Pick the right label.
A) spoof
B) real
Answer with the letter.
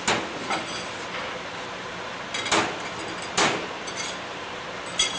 B